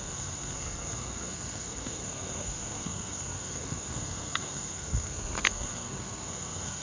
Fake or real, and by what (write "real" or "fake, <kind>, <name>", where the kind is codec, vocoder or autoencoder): fake, codec, SNAC